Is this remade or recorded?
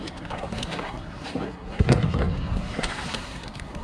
remade